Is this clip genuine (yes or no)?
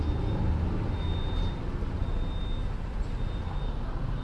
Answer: yes